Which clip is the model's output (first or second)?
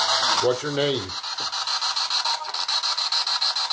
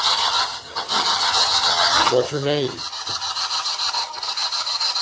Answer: second